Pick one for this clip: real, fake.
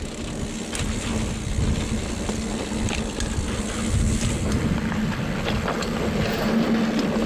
real